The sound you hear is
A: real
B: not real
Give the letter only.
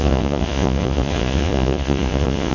B